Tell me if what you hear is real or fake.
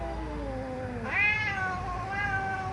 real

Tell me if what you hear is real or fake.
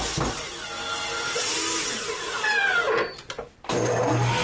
real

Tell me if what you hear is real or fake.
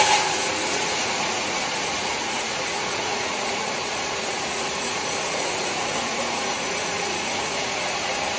fake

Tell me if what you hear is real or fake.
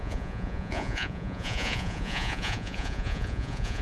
fake